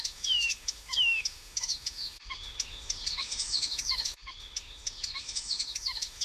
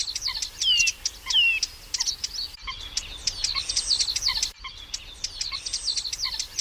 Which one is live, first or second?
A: second